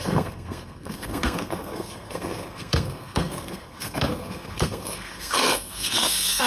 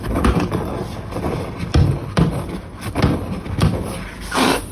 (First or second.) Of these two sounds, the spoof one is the first